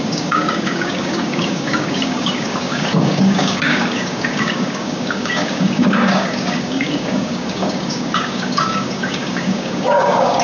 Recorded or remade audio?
remade